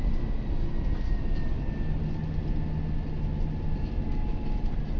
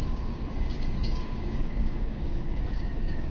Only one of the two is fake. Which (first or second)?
second